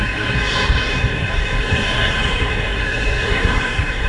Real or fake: fake